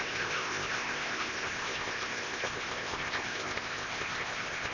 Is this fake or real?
fake